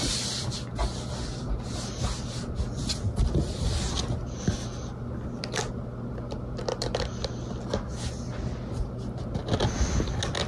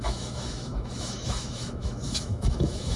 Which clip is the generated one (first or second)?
second